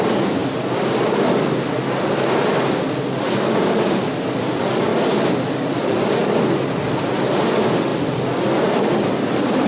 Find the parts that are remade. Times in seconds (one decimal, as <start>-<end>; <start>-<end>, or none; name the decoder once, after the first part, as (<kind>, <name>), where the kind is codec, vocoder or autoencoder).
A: 4.9-6.1 (vocoder, BigVGAN v2); 7.9-8.8